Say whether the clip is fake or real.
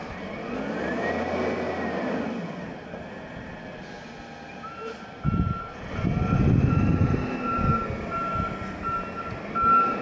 real